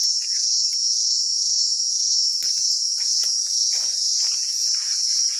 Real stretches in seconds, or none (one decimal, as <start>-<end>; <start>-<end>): none